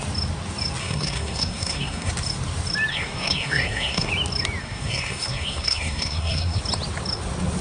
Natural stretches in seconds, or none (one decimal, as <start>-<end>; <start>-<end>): 0.0-0.8; 2.1-2.9; 4.1-4.6; 6.6-7.6